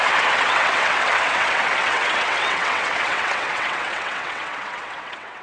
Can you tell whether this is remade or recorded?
remade